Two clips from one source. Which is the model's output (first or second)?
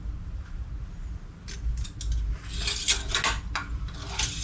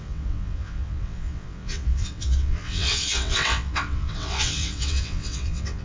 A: second